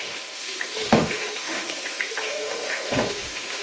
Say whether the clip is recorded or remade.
remade